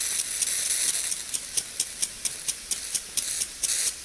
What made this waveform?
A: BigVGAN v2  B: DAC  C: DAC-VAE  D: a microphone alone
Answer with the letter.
D